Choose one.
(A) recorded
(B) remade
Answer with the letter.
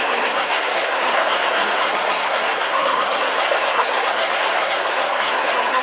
B